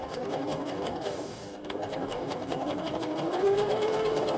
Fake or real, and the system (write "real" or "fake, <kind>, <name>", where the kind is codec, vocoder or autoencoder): fake, codec, DAC